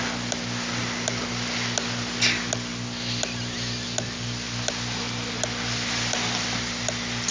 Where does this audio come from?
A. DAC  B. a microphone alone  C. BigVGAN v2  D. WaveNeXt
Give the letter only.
B